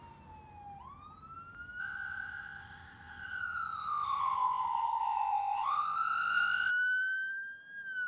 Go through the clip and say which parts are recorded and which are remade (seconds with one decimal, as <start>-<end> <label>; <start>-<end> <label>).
0.0-1.8 recorded; 1.8-6.7 remade; 6.7-8.1 recorded